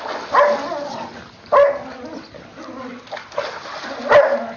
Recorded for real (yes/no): yes